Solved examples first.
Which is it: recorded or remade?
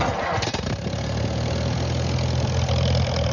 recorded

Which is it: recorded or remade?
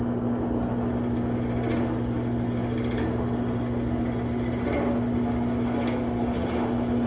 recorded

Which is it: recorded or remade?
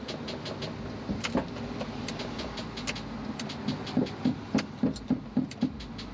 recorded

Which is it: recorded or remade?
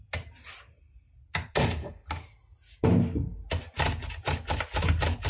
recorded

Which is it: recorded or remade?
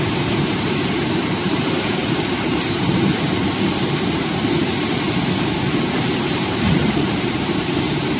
remade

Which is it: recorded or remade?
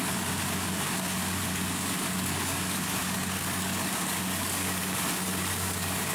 remade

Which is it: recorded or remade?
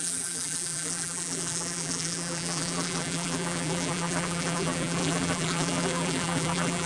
remade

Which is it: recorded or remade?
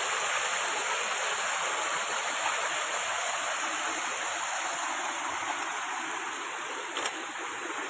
recorded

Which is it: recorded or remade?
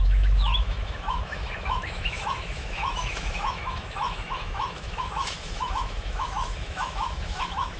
remade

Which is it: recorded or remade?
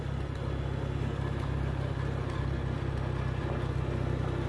recorded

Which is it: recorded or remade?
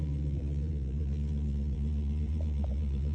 remade